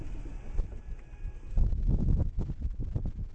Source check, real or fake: real